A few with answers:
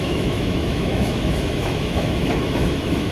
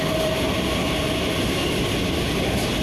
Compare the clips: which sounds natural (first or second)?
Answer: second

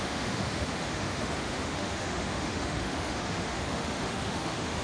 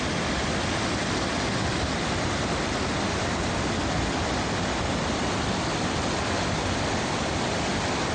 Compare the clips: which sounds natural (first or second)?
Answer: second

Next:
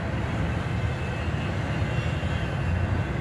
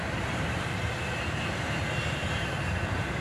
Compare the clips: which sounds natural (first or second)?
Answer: first